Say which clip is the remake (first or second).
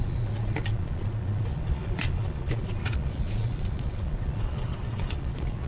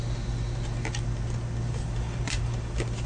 first